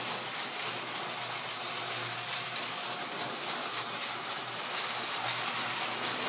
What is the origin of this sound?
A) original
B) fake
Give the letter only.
A